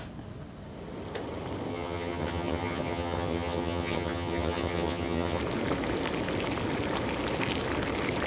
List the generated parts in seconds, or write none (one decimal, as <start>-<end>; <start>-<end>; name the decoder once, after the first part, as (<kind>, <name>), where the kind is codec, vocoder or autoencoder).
1.7-5.4 (vocoder, HiFi-GAN)